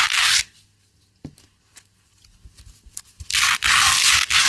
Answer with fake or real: real